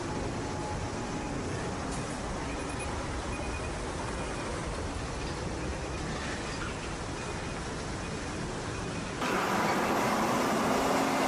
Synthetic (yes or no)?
no